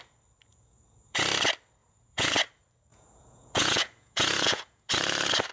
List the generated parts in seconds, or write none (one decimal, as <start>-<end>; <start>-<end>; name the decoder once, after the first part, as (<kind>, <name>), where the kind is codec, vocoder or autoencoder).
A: 0.5-1.2 (vocoder, Vocos); 1.8-2.3; 2.9-4.9